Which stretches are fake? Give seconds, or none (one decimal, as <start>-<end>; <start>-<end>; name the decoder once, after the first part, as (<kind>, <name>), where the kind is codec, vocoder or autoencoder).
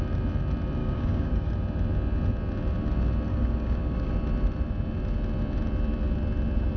0.8-1.5 (codec, DAC); 3.3-4.1